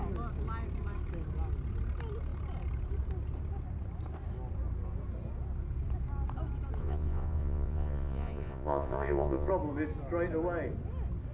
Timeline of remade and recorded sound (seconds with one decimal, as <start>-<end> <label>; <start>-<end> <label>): 0.0-6.8 recorded; 6.8-9.5 remade; 9.5-11.3 recorded